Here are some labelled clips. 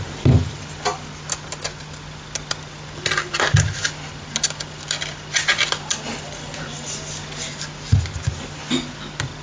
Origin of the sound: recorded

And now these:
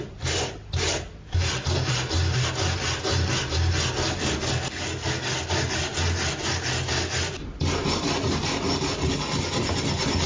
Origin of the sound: recorded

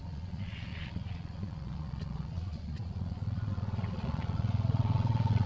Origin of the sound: remade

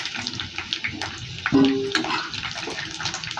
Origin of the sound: recorded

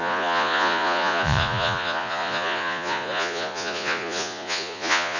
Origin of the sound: remade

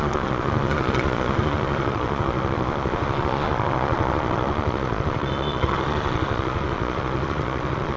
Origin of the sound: remade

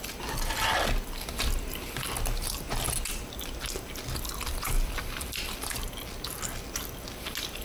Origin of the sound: recorded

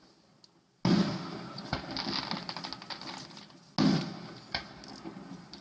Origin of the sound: recorded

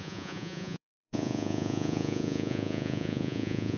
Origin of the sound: remade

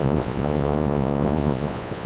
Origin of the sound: remade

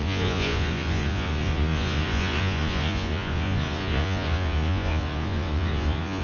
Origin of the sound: remade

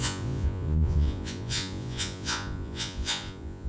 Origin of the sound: remade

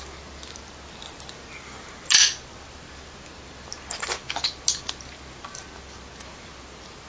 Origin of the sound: recorded